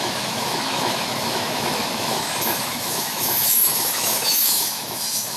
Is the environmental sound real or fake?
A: fake